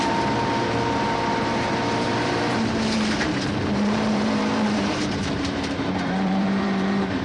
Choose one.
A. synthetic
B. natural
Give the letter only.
A